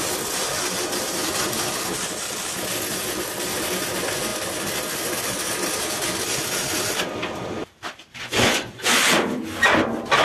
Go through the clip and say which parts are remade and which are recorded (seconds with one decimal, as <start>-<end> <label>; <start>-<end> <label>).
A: 0.0-8.1 recorded; 8.1-8.9 remade; 8.9-10.2 recorded